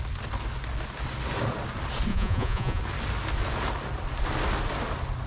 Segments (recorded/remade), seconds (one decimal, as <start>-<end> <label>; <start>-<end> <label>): 0.0-2.1 recorded; 2.1-2.8 remade; 2.8-5.3 recorded